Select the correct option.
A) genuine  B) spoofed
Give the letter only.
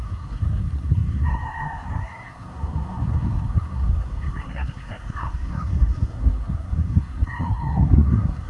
B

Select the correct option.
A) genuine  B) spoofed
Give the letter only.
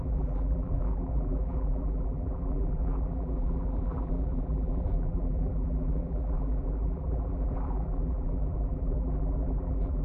B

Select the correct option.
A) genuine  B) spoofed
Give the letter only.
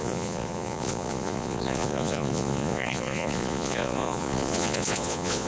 B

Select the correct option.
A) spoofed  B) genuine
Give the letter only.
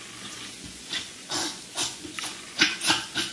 A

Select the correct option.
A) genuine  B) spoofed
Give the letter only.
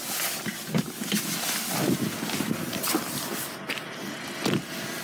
A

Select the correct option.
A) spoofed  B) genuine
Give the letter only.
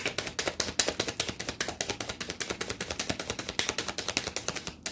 B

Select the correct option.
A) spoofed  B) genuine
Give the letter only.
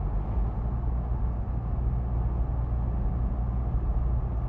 B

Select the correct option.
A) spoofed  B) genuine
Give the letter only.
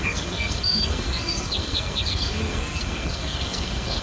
A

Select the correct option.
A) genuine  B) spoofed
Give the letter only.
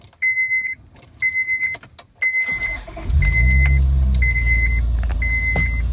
A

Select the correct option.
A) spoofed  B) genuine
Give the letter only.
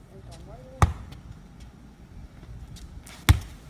B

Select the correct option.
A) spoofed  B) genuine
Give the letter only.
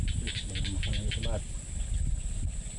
B